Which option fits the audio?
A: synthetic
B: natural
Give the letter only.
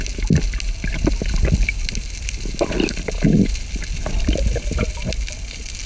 B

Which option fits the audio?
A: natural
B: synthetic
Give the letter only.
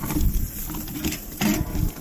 A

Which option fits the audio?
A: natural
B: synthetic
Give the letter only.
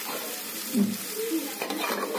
A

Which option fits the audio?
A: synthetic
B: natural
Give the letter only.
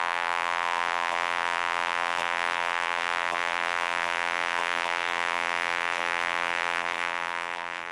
A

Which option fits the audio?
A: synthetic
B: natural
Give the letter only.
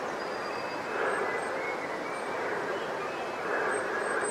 B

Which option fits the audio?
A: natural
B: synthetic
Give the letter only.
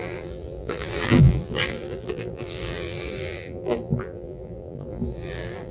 B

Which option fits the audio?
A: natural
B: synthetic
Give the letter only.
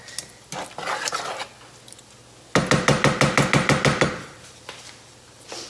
A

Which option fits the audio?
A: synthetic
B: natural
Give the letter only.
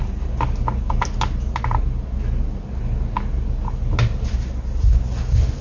B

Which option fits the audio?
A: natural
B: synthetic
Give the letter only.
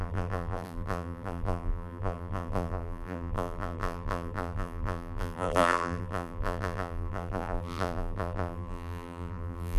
B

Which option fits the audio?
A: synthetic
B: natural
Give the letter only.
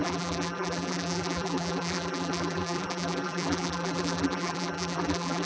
A